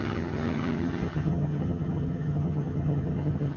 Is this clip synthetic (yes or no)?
yes